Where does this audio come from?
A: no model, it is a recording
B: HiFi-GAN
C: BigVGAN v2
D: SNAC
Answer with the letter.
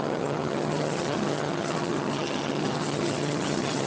B